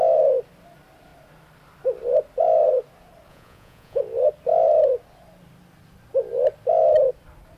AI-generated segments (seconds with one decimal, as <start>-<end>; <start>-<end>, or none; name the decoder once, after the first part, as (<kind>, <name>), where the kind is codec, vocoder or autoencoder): 3.3-4.0 (vocoder, Vocos)